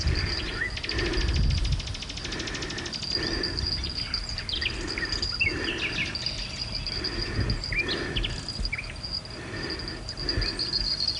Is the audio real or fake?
real